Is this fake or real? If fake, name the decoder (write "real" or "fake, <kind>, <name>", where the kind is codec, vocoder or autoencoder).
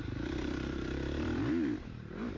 fake, vocoder, BigVGAN v2